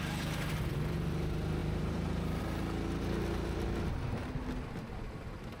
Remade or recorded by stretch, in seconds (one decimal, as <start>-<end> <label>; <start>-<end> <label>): 0.0-1.6 recorded; 1.6-2.4 remade; 2.4-5.6 recorded